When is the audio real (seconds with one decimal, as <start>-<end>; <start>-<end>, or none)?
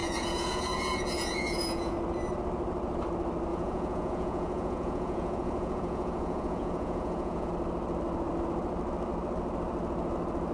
1.9-3.5; 7.5-10.5